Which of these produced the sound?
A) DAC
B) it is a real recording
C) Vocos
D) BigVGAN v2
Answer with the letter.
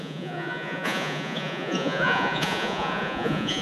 C